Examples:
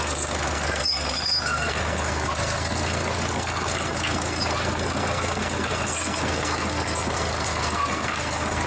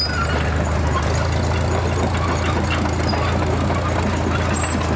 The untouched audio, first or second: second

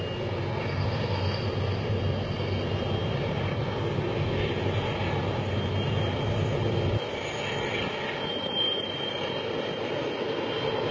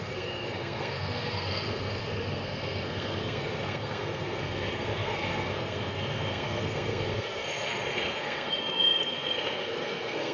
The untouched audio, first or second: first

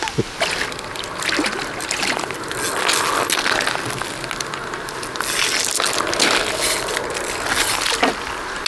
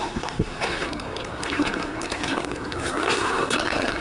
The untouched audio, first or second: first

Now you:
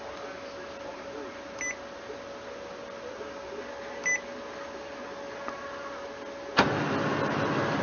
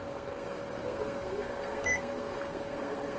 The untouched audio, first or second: first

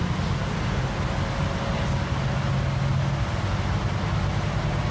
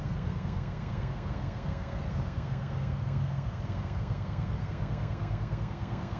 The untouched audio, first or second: first